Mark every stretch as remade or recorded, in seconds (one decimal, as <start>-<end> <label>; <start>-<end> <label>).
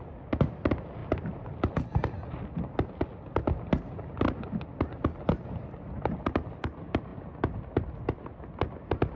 0.0-9.2 recorded